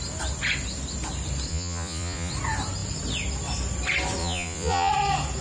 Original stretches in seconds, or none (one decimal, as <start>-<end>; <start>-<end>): 0.0-1.5; 2.3-4.2; 4.9-5.4